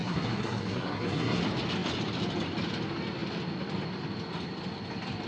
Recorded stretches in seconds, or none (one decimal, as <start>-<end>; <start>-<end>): 1.4-5.3